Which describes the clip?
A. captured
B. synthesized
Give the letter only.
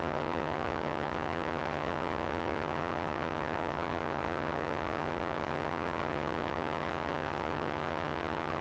B